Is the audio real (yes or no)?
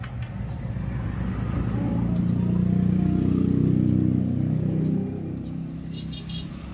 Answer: yes